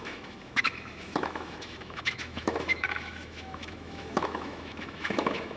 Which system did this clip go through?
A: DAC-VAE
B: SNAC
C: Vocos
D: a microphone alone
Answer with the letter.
A